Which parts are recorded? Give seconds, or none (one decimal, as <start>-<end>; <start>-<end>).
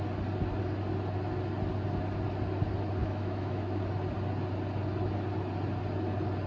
0.0-3.0; 3.8-6.5